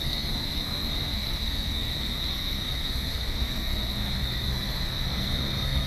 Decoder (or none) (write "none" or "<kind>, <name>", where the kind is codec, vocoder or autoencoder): codec, SNAC